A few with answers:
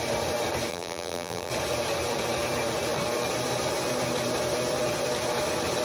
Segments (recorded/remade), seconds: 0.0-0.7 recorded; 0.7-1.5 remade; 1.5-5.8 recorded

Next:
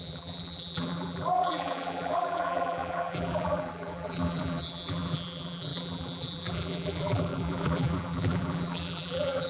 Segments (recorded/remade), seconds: 0.0-9.5 remade

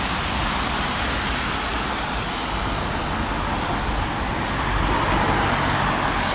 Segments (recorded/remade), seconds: 0.0-6.3 recorded